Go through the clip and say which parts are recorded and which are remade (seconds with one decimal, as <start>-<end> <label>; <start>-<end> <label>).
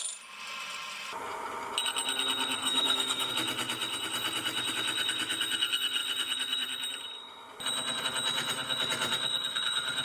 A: 0.0-2.6 recorded; 2.6-3.3 remade; 3.3-10.0 recorded